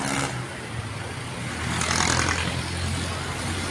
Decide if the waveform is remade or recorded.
recorded